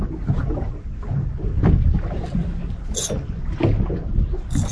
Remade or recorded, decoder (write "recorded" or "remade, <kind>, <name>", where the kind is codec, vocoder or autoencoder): recorded